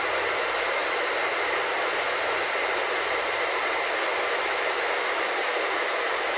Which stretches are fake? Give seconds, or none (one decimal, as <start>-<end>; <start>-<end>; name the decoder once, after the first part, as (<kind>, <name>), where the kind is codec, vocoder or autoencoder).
none